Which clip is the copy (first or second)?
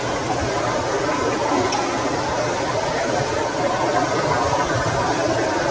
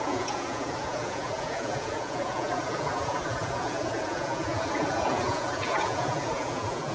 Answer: second